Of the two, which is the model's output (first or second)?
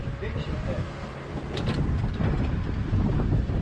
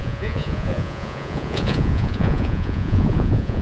second